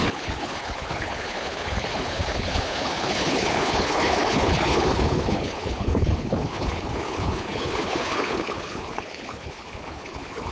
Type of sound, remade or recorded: remade